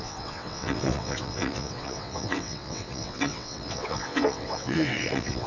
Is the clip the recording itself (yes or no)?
no